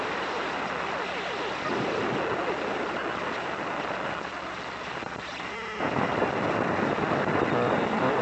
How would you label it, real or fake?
real